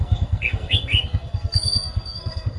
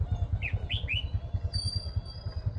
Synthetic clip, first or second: first